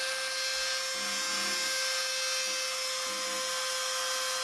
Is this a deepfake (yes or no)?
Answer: no